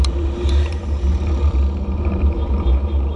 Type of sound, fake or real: fake